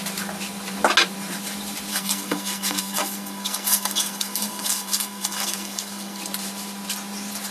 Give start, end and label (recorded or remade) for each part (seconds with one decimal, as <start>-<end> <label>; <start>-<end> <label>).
0.0-1.9 recorded; 1.9-6.2 remade; 6.2-7.5 recorded